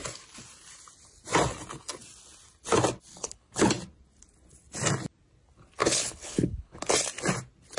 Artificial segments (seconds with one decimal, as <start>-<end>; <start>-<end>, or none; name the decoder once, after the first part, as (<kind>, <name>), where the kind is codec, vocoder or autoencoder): 3.1-3.7 (codec, HILCodec); 5.8-6.8